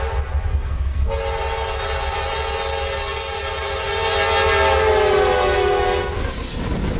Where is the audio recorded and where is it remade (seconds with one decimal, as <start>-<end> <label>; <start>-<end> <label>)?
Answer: 0.0-0.5 recorded; 0.5-1.1 remade; 1.1-7.0 recorded